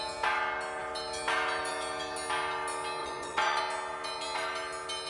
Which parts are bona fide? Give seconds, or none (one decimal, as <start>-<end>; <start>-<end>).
0.0-3.0; 3.6-5.1